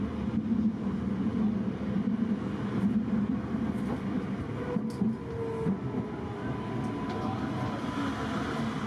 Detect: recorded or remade recorded